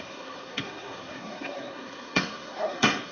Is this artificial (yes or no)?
yes